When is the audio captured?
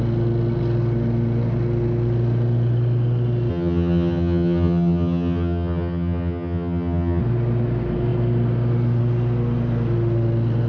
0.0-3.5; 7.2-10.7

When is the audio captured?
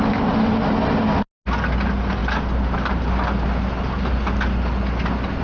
0.0-5.4